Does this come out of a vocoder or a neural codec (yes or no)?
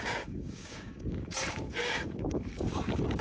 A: yes